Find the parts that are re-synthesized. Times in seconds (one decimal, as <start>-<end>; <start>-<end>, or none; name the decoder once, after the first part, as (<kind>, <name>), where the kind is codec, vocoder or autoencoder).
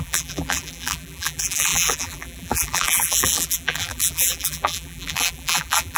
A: 0.0-6.0 (vocoder, BigVGAN v2)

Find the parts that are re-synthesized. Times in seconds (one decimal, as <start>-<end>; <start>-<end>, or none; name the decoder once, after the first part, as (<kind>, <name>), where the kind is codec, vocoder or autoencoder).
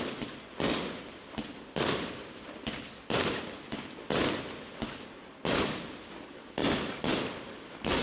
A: 0.7-3.4 (vocoder, BigVGAN v2)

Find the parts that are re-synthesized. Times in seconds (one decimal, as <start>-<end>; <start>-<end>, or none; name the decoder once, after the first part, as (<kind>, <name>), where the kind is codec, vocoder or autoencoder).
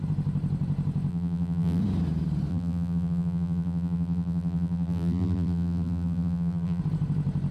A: 1.1-1.8 (vocoder, BigVGAN v2); 2.5-6.8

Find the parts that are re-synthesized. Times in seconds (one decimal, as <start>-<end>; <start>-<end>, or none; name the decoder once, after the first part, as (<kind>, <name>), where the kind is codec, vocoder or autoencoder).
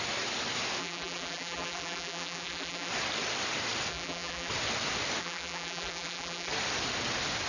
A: 0.8-2.9 (vocoder, BigVGAN v2); 3.9-4.5; 5.2-6.5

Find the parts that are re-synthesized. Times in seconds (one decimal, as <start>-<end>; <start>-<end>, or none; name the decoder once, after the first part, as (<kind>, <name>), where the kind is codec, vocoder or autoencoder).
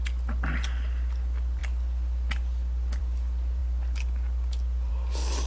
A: none